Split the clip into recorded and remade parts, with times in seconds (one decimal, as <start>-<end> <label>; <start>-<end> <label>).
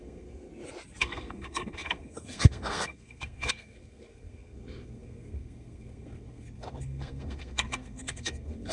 0.0-0.5 remade; 0.5-1.0 recorded; 1.0-8.7 remade